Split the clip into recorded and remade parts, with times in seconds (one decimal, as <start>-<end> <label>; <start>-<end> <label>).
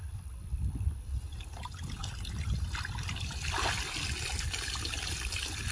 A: 0.0-5.7 recorded